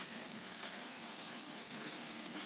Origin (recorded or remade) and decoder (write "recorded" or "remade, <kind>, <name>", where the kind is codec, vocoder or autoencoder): remade, codec, SNAC